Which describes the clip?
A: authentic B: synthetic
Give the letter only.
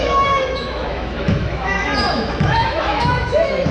B